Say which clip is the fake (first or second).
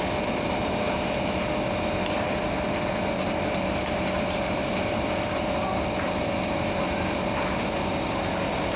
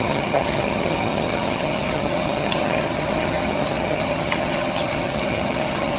second